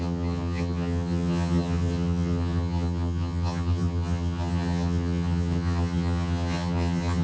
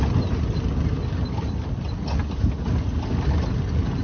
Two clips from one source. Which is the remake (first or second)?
first